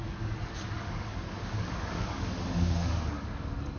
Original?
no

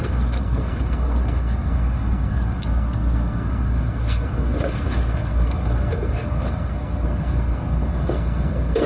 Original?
no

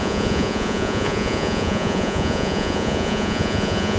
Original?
no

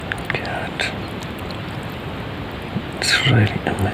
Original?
yes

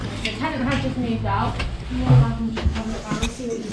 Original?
yes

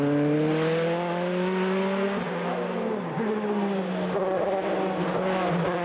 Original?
yes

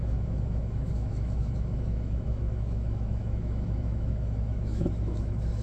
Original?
no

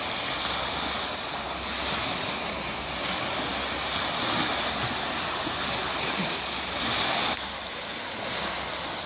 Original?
yes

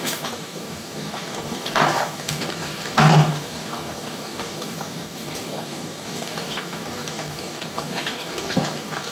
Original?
no